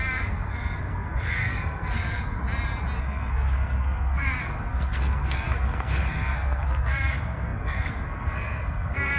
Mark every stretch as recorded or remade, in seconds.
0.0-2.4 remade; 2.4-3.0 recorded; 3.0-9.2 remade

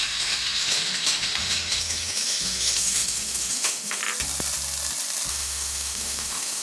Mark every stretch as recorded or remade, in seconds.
0.0-4.0 remade; 4.0-5.3 recorded; 5.3-6.6 remade